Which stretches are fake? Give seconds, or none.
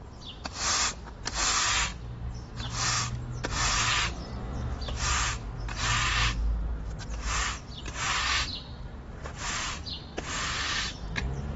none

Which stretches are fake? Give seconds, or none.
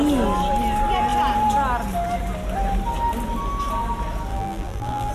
4.3-5.1 (vocoder, BigVGAN v2)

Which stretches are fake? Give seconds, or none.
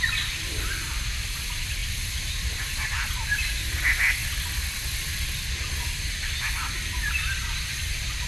none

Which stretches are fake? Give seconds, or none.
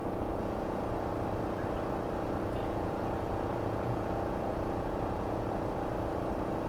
0.0-0.8 (vocoder, Vocos); 2.6-5.5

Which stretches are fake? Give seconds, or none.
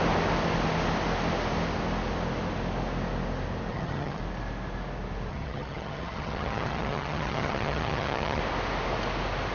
3.7-4.2 (vocoder, HiFi-GAN); 5.3-8.4